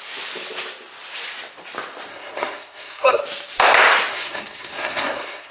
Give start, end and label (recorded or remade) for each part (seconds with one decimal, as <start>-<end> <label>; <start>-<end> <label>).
0.0-2.1 recorded; 2.1-3.2 remade; 3.2-4.1 recorded; 4.1-5.5 remade